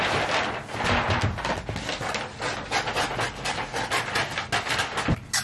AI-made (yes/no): no